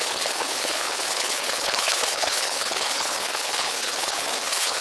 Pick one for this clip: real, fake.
fake